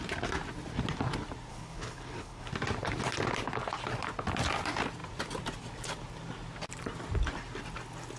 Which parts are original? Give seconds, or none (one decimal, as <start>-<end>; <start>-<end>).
0.0-1.5; 2.5-8.2